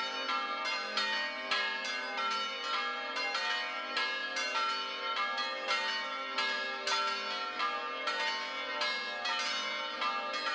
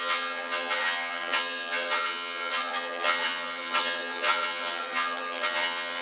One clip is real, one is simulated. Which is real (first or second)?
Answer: first